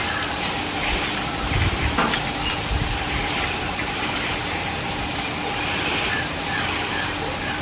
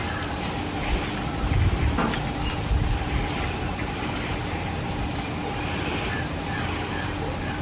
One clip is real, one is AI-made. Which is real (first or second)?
second